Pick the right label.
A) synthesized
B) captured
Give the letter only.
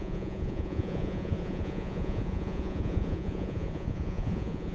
A